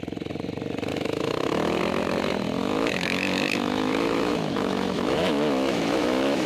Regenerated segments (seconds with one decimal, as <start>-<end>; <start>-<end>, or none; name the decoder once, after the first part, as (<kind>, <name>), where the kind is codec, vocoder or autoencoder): 0.9-1.8 (autoencoder, DAC-VAE); 2.6-6.5